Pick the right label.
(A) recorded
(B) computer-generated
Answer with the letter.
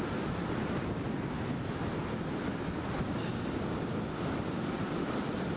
A